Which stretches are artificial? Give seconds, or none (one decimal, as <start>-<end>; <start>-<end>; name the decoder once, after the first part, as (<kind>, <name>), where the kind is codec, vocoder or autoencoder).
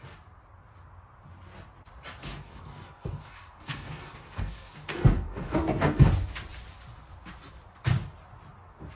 2.2-6.1 (codec, SNAC)